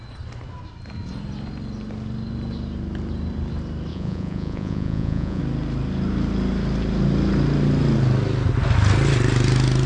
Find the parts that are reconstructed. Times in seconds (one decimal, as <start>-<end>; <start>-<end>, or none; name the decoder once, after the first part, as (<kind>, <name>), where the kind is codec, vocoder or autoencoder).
3.9-5.4 (vocoder, Vocos)